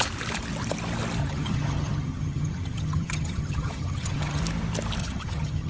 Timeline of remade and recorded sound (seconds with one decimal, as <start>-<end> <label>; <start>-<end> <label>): 0.0-1.2 recorded; 1.2-4.4 remade; 4.4-5.0 recorded; 5.0-5.7 remade